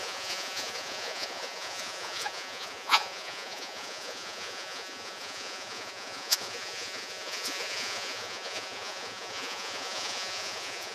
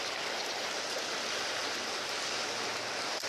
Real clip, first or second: second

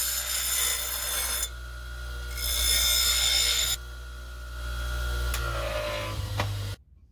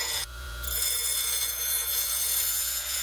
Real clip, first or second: first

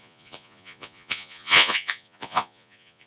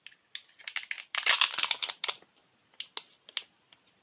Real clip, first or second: second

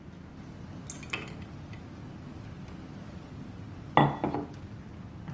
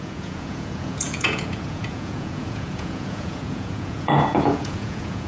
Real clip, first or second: first